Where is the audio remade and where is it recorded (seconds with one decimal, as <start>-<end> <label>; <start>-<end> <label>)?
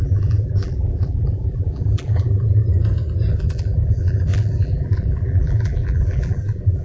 0.0-2.6 remade; 2.6-3.3 recorded; 3.3-6.8 remade